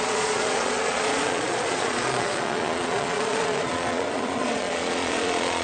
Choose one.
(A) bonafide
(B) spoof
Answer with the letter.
B